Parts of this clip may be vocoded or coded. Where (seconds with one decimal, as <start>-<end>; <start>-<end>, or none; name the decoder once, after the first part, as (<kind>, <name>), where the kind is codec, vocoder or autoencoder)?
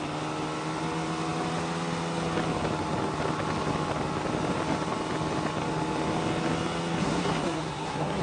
7.0-8.2 (codec, SNAC)